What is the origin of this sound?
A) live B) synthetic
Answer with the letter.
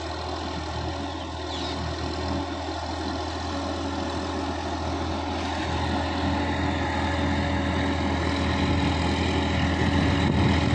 A